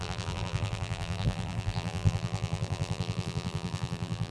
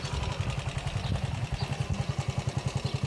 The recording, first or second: second